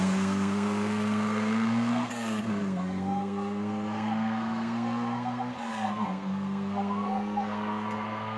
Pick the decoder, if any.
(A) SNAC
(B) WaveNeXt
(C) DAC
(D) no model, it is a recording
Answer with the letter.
A